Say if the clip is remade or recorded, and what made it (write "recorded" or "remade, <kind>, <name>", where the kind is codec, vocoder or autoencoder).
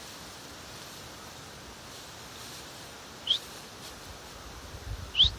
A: recorded